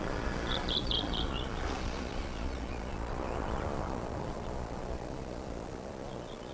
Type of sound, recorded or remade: remade